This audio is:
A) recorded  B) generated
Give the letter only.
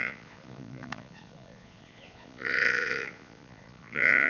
B